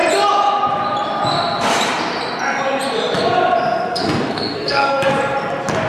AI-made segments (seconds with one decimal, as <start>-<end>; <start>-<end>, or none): 3.9-5.1